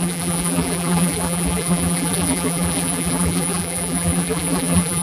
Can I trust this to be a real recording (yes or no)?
no